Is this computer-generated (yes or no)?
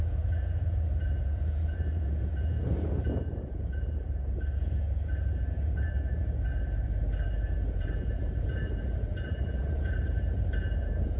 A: yes